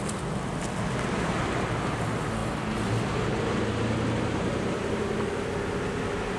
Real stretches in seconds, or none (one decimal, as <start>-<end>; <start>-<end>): 0.0-6.4